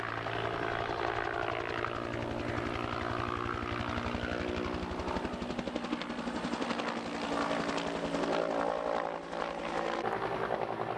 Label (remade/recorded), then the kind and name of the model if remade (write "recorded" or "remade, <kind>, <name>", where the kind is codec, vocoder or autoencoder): recorded